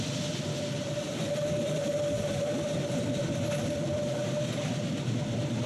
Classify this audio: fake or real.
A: fake